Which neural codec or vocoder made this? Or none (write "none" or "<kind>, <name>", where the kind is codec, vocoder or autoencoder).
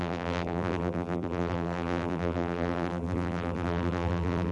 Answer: vocoder, BigVGAN v2